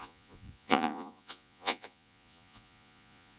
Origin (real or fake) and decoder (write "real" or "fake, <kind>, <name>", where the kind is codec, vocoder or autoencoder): fake, vocoder, Vocos